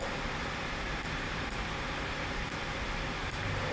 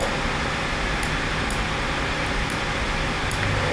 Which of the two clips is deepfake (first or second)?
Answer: first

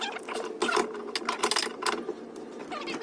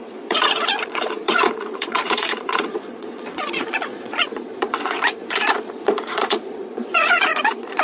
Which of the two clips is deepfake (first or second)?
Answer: second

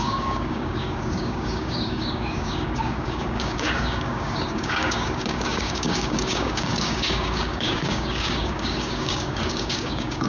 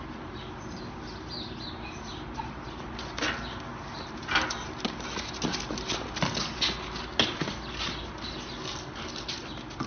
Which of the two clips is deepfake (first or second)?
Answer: first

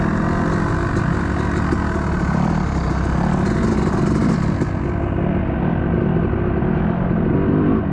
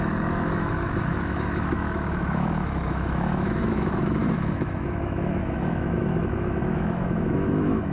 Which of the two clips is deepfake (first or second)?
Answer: second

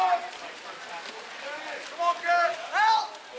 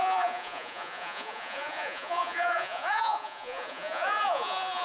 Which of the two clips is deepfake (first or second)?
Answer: second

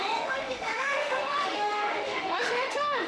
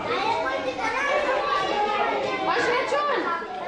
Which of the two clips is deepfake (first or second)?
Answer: first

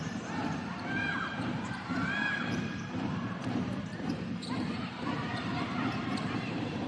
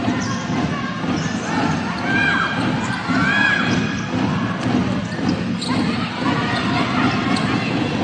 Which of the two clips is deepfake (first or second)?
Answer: first